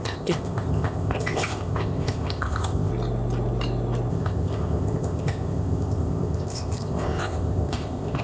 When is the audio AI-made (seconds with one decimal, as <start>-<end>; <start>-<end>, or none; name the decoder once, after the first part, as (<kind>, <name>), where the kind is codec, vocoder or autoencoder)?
0.0-2.9 (codec, ZipCodec); 4.1-8.2